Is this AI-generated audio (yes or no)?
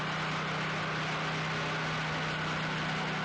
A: no